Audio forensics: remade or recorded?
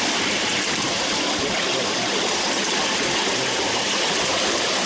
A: recorded